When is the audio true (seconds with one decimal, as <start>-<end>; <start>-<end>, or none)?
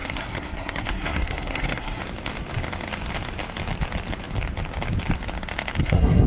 2.0-5.8